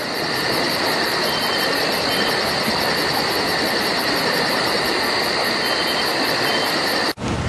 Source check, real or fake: real